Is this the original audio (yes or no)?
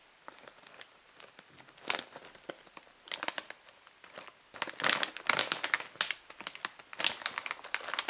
yes